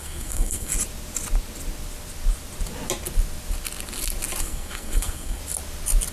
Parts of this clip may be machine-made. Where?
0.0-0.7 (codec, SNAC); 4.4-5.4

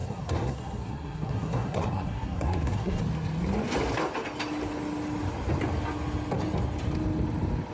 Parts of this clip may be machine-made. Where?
0.0-3.0 (codec, SNAC)

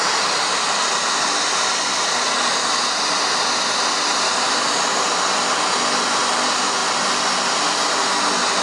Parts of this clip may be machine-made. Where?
none

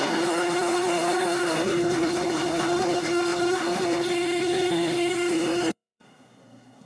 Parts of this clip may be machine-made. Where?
0.0-6.9 (codec, SNAC)

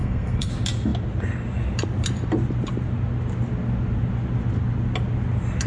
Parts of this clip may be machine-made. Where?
0.0-0.5 (codec, SNAC)